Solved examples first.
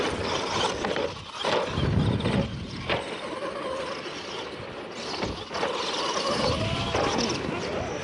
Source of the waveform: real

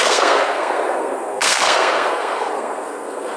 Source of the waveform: fake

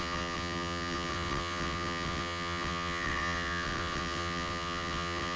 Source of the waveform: fake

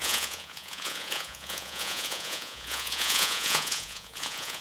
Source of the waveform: fake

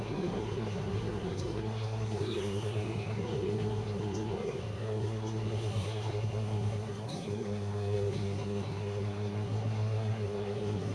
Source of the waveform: fake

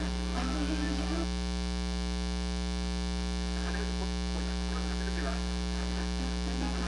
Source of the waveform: real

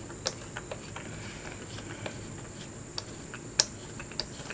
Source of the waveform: real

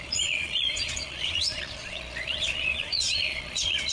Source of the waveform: fake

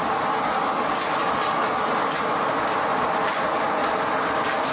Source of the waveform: real